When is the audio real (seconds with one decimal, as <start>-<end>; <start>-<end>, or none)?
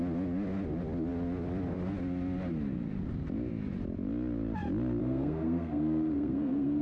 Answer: 0.0-5.0